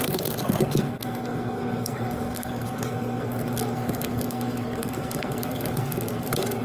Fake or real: fake